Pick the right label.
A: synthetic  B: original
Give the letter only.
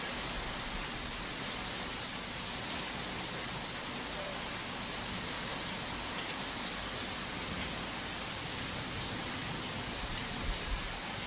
B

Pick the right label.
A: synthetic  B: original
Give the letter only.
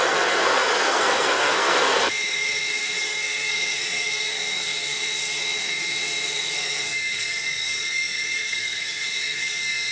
A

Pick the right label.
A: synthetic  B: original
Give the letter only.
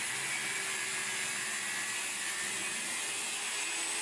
B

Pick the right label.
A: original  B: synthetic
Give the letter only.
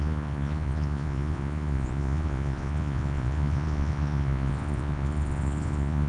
B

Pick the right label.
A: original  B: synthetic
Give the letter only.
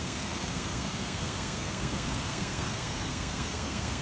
B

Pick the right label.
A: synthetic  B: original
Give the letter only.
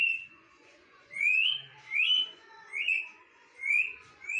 A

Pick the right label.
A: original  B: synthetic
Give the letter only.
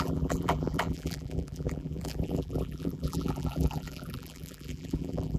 B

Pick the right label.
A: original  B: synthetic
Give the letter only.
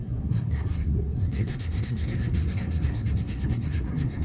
B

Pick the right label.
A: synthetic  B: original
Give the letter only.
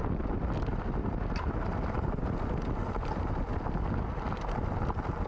B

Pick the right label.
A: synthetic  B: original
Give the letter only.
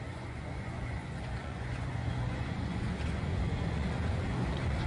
A